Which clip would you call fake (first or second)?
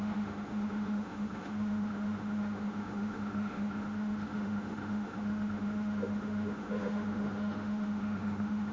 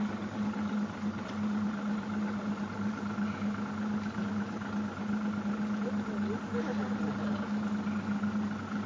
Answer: first